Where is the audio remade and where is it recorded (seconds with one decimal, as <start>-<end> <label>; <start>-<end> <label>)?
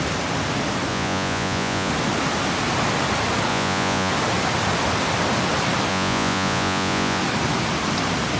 0.0-0.9 recorded; 0.9-1.9 remade; 1.9-3.5 recorded; 3.5-4.1 remade; 4.1-5.9 recorded; 5.9-7.2 remade; 7.2-8.4 recorded